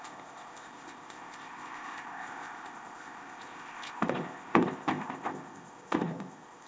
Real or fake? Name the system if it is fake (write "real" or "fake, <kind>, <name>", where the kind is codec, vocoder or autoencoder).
fake, codec, ZipCodec